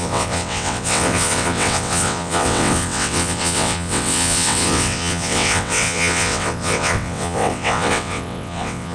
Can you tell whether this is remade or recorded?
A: remade